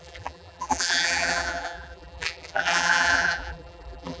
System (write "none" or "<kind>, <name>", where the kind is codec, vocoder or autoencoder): vocoder, BigVGAN v2